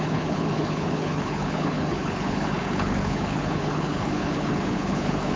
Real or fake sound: fake